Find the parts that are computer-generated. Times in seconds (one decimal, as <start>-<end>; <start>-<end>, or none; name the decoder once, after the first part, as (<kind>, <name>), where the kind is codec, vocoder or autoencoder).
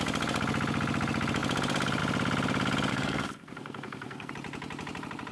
2.9-4.3 (codec, SNAC)